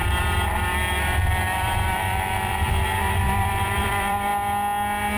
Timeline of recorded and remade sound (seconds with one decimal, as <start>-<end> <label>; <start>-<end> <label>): 0.0-4.3 remade; 4.3-5.2 recorded